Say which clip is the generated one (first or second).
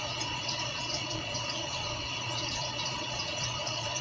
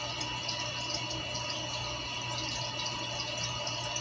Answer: first